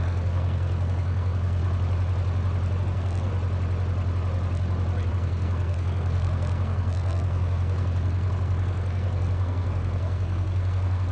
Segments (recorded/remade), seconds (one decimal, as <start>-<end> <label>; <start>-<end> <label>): 0.0-1.6 remade; 1.6-2.8 recorded; 2.8-3.3 remade; 3.3-5.1 recorded; 5.1-11.1 remade